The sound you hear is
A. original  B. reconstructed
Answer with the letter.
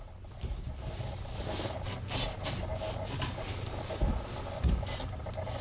A